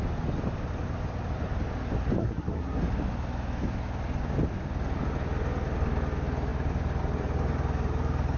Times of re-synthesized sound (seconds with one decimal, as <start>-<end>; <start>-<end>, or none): 2.2-2.8